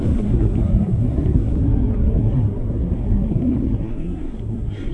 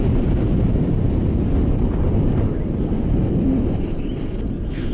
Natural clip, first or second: second